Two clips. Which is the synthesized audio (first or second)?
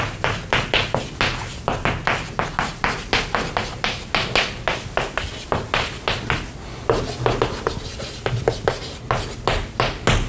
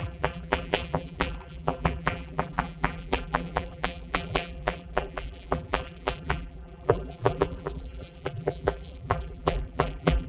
second